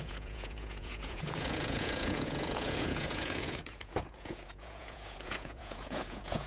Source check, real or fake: fake